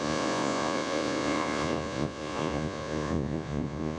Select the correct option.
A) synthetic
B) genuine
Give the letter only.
A